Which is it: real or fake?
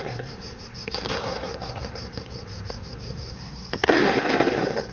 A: fake